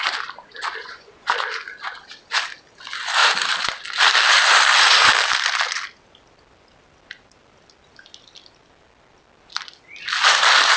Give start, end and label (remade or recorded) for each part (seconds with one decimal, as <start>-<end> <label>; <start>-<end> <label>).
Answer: 0.0-0.8 recorded; 0.8-1.3 remade; 1.3-10.8 recorded